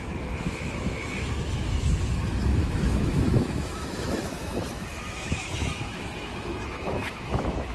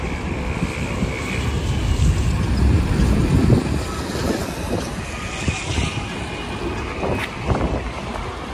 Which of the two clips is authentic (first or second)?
second